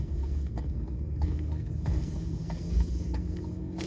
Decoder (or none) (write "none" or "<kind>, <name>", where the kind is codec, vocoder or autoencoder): codec, SNAC